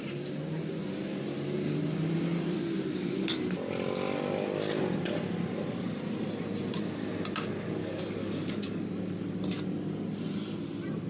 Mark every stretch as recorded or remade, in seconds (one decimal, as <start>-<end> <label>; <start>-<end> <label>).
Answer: 0.0-7.8 recorded; 7.8-8.8 remade; 8.8-11.1 recorded